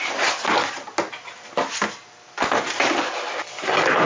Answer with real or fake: real